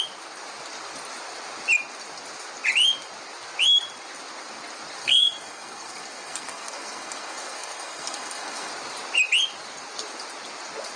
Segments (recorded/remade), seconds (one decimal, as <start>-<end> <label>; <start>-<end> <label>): 0.0-5.0 recorded; 5.0-8.7 remade; 8.7-11.0 recorded